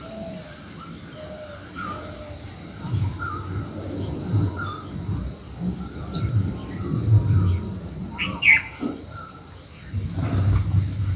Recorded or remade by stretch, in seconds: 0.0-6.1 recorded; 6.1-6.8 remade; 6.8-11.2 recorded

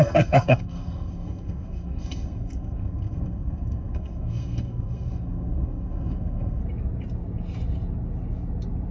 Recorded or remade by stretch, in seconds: 0.0-6.6 remade; 6.6-8.9 recorded

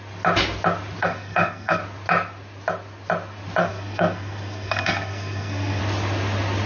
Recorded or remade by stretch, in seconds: 0.0-1.0 recorded; 1.0-1.8 remade; 1.8-3.6 recorded; 3.6-5.8 remade; 5.8-6.7 recorded

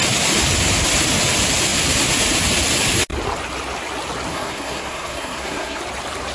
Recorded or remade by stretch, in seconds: 0.0-4.3 recorded; 4.3-5.8 remade; 5.8-6.3 recorded